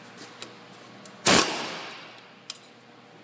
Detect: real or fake real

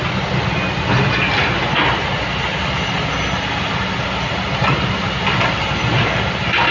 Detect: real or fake real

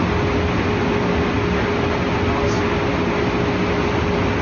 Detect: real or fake real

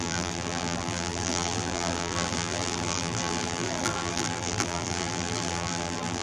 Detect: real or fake fake